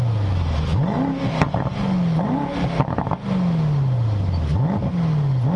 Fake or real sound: real